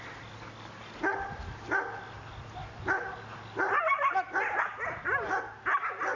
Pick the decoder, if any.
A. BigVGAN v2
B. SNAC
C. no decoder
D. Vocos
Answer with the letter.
C